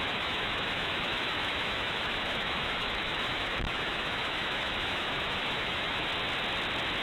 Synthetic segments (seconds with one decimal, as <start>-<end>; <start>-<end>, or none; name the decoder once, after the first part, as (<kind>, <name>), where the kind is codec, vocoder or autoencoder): 0.0-6.1 (autoencoder, DAC-VAE)